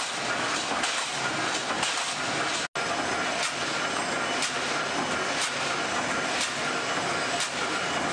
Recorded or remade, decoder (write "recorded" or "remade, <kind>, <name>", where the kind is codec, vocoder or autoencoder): recorded